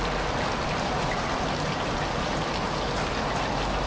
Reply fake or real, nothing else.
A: real